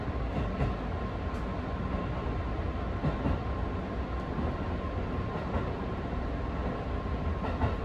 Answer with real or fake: real